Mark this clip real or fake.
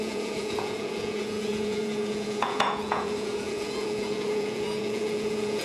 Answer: fake